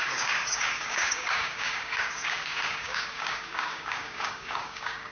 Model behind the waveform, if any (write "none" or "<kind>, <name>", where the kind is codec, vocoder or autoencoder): codec, DAC